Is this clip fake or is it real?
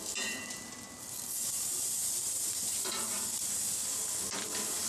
real